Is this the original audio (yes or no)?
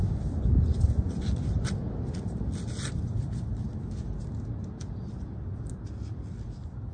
yes